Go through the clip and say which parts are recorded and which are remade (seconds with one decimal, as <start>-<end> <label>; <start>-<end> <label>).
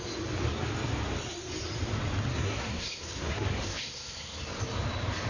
0.0-2.3 recorded; 2.3-4.4 remade; 4.4-5.3 recorded